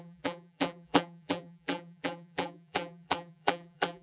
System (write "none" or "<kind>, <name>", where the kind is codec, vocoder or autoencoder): vocoder, BigVGAN v2